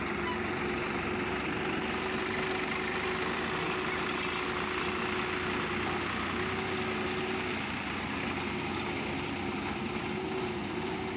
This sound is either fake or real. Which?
real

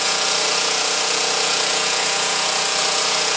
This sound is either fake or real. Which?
fake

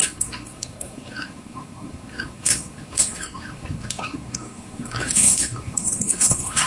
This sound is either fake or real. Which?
fake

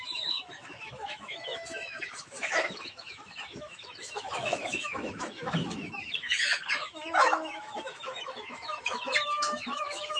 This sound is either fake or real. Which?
fake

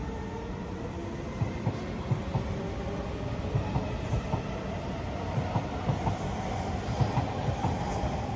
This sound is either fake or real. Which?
real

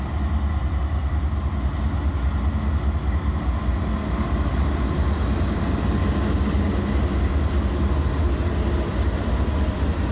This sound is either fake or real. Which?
real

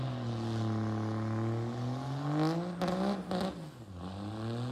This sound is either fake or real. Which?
real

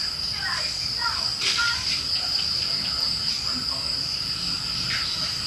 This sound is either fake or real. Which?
real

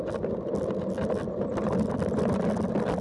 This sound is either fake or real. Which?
real